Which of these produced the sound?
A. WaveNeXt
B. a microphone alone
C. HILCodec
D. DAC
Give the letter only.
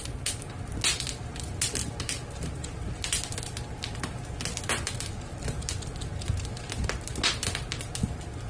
B